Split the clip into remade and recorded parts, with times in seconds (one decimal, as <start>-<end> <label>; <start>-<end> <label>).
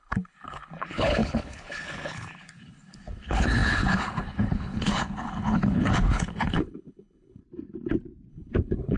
0.0-7.4 remade; 7.4-8.3 recorded; 8.3-9.0 remade